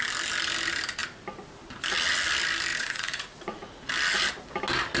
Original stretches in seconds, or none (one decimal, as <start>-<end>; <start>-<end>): 0.0-2.7; 3.9-5.0